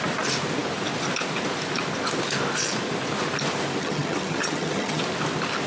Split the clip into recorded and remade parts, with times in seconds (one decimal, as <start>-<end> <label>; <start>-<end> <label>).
0.0-3.8 recorded; 3.8-5.0 remade; 5.0-5.7 recorded